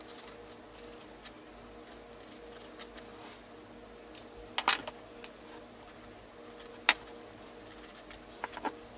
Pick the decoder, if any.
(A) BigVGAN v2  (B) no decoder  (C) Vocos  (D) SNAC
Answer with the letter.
B